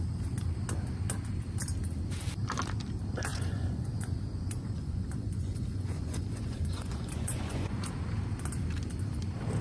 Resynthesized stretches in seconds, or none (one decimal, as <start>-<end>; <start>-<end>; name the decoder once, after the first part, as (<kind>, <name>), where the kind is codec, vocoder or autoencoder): 3.3-7.9 (vocoder, Vocos)